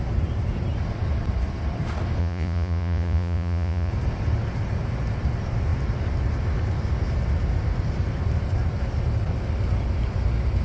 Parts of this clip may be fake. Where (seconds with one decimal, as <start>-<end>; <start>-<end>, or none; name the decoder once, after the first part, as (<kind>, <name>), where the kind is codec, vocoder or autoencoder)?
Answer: 2.2-3.9 (vocoder, Vocos)